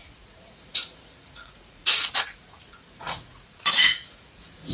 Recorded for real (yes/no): no